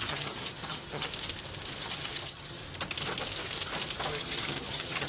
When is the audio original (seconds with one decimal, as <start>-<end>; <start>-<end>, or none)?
1.1-1.8; 2.6-4.2